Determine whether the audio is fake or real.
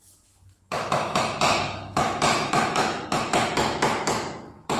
fake